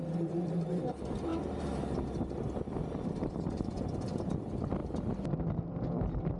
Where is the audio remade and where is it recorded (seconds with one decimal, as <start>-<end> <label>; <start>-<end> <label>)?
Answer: 0.0-6.4 recorded